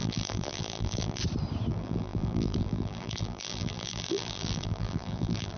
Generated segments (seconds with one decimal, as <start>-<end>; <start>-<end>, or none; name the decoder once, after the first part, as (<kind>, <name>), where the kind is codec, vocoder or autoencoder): 0.0-1.2 (vocoder, BigVGAN v2); 1.7-5.6